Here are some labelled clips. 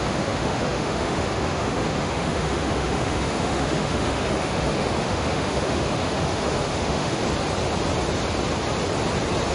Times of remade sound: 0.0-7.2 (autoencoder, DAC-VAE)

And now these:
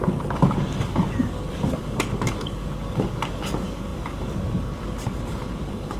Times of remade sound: 0.0-6.0 (codec, DAC)